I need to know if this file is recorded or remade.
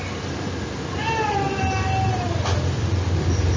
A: recorded